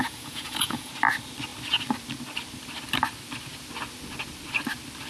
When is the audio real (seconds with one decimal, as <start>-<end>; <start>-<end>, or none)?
0.9-5.1